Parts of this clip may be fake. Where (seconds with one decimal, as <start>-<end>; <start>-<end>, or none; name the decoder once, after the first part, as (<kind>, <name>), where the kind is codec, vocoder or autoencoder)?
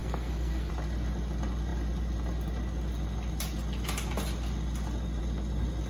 0.0-0.7 (codec, SNAC)